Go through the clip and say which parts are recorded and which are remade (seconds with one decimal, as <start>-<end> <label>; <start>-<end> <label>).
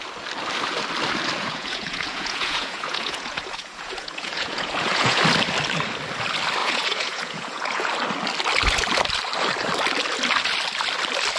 0.0-1.4 recorded; 1.4-5.2 remade; 5.2-6.6 recorded; 6.6-7.9 remade; 7.9-11.4 recorded